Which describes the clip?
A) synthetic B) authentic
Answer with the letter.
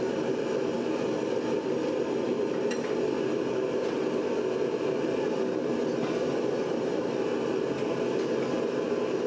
B